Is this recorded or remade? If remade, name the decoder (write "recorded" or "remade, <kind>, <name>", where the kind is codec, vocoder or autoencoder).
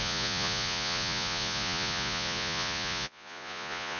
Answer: remade, vocoder, Vocos